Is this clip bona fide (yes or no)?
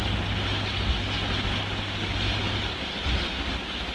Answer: yes